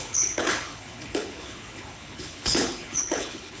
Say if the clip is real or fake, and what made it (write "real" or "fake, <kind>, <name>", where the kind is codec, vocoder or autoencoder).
fake, codec, HILCodec